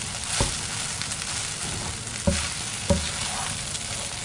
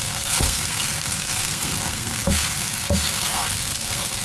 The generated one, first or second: second